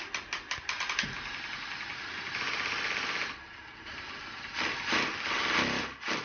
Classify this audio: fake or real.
real